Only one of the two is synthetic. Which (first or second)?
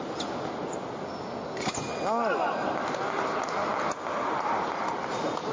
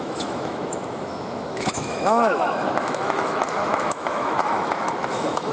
second